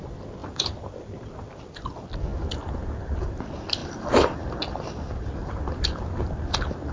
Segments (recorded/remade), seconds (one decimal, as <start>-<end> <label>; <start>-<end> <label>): 0.0-0.4 recorded; 0.4-1.0 remade; 1.0-3.8 recorded; 3.8-5.6 remade; 5.6-6.9 recorded